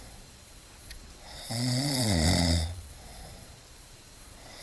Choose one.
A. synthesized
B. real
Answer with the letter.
A